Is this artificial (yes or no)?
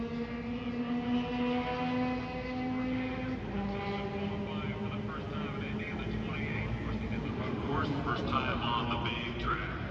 no